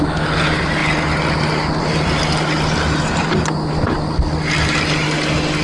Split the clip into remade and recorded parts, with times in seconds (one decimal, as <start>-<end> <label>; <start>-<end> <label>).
0.0-5.6 recorded